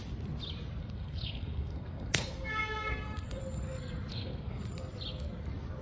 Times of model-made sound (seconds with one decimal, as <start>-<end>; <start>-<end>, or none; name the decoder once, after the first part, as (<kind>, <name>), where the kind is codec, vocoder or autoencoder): 0.8-3.4 (codec, SNAC); 4.1-4.6

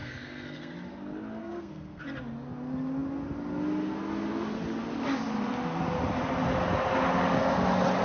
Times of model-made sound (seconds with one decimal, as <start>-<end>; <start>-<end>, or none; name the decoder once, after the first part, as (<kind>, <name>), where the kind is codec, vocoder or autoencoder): 0.0-0.7 (codec, SNAC); 1.4-2.0

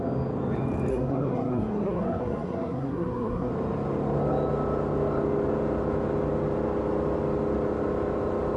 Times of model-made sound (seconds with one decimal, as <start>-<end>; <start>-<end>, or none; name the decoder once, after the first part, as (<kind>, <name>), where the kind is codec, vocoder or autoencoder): 0.9-3.5 (codec, SNAC)

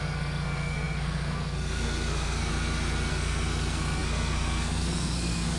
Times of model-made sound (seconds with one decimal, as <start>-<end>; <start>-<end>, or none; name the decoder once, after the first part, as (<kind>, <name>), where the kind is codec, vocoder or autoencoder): 0.0-2.5 (codec, SNAC); 3.1-5.6